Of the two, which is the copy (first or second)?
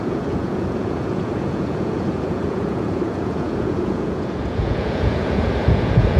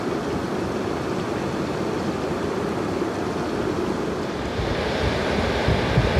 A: first